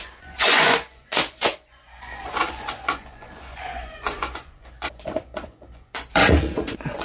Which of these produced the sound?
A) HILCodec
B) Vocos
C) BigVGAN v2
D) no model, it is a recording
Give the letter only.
B